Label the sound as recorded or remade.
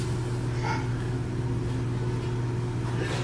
recorded